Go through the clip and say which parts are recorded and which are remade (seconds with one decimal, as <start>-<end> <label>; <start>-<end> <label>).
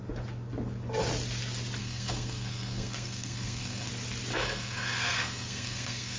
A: 0.0-1.8 recorded; 1.8-3.9 remade; 3.9-4.3 recorded; 4.3-6.2 remade